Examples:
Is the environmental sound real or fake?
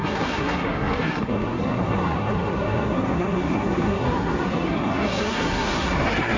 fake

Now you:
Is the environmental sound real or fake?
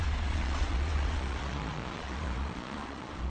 fake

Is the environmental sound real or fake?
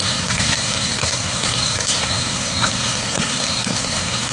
fake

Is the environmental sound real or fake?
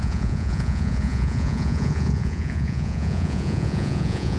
fake